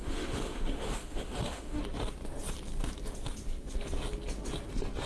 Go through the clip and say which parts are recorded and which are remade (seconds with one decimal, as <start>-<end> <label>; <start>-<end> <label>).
0.0-1.8 remade; 1.8-5.1 recorded